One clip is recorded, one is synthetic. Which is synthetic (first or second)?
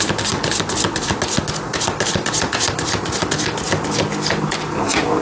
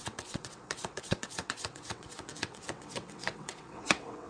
second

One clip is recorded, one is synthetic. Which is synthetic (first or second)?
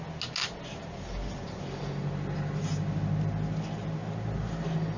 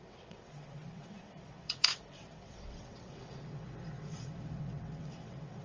second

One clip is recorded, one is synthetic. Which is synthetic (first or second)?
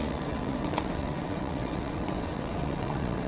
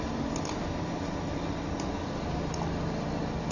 first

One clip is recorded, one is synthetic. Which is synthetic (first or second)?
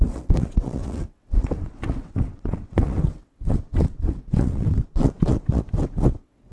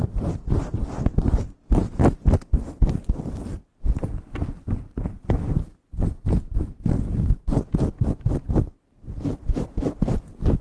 first